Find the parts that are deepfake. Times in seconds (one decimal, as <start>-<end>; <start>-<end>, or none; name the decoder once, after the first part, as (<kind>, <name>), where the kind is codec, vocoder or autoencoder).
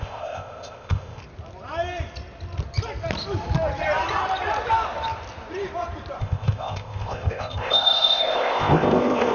0.0-1.2 (codec, ZipCodec); 6.2-9.3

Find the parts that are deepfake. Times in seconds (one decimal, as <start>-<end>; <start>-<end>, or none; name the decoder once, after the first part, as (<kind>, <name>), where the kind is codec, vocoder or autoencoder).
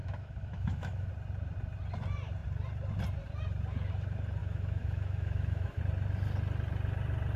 0.0-1.1 (autoencoder, DAC-VAE); 4.4-5.8